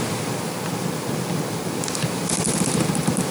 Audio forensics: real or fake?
real